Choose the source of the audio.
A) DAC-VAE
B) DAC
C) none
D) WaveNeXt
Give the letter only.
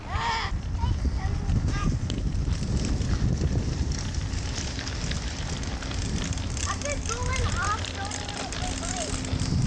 C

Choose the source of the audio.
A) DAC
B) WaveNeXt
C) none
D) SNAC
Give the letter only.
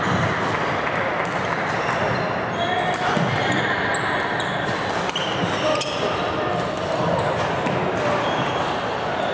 C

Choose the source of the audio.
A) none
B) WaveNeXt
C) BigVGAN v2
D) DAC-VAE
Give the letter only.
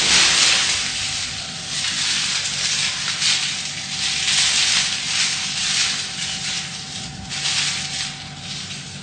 A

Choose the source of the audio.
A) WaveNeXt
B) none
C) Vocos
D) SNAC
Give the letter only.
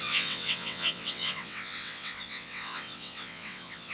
A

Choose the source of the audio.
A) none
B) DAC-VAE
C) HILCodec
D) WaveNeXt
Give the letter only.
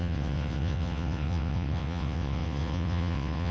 D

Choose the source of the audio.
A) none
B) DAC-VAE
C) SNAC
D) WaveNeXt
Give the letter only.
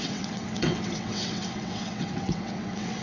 D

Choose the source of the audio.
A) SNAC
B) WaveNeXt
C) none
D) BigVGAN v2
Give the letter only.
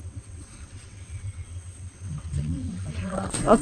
B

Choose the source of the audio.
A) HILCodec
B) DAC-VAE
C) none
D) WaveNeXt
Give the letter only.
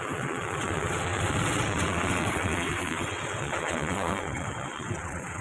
D